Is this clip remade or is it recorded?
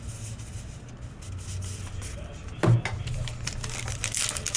recorded